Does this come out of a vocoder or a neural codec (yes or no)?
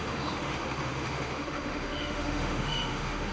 yes